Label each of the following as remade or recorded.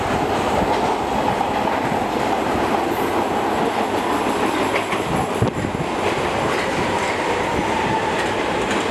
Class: remade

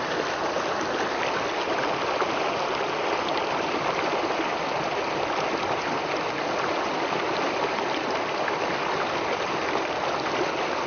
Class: recorded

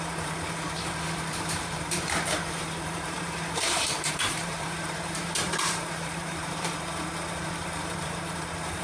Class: remade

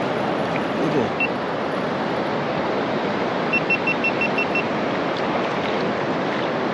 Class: recorded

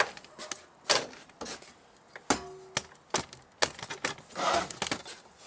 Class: recorded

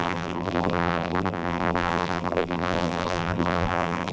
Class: remade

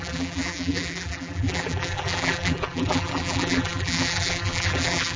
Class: remade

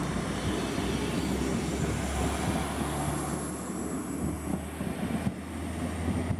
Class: recorded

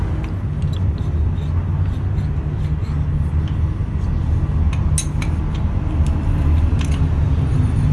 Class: recorded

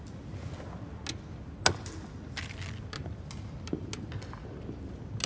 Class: recorded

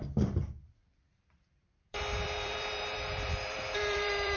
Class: remade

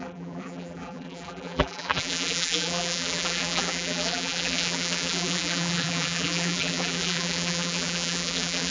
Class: remade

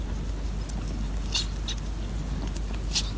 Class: recorded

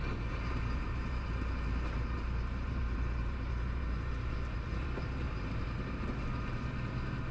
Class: remade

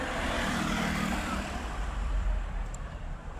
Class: remade